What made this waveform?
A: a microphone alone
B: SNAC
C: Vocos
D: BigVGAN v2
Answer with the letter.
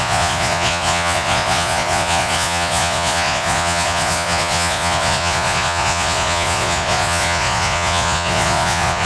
C